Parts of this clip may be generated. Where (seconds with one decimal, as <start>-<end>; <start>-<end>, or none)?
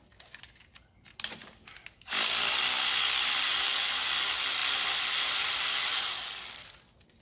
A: 1.4-2.6; 4.6-5.8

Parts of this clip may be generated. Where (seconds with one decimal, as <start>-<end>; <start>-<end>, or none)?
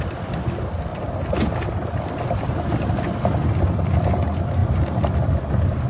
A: 0.9-3.0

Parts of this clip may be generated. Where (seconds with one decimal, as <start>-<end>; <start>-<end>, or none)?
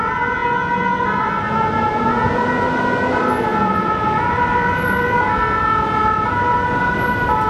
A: 3.5-5.2